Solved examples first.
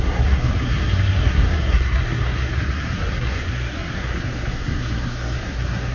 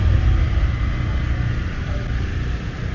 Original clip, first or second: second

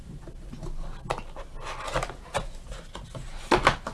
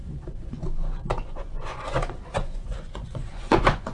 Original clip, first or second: first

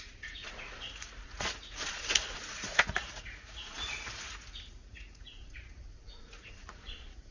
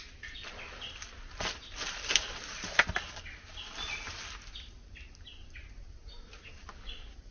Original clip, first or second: second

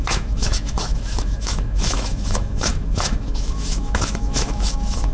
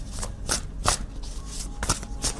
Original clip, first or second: second